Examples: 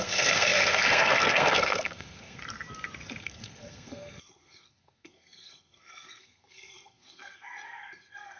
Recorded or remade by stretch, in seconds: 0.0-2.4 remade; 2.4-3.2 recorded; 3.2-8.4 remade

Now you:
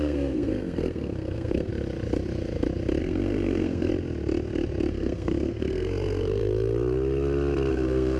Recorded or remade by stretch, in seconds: 0.0-1.7 remade; 1.7-3.0 recorded; 3.0-3.9 remade; 3.9-4.9 recorded; 4.9-6.4 remade; 6.4-7.7 recorded; 7.7-8.2 remade

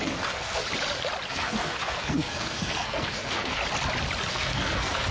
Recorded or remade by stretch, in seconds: 0.0-0.6 remade; 0.6-1.3 recorded; 1.3-3.6 remade; 3.6-4.3 recorded; 4.3-5.1 remade